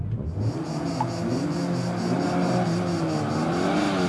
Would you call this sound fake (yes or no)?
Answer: no